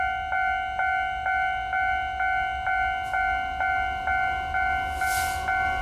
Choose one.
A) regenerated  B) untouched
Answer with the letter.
B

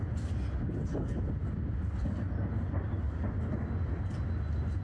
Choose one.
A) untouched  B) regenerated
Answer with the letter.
A